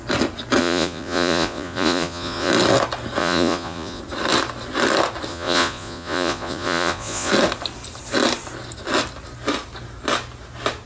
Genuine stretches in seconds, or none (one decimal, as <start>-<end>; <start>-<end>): 0.0-0.6; 2.5-3.2; 4.0-5.3; 7.3-10.9